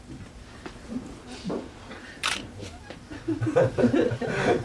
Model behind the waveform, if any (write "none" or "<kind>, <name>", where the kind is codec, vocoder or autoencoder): vocoder, BigVGAN v2